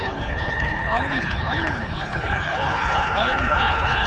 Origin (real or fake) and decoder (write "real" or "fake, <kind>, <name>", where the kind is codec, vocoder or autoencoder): fake, codec, HILCodec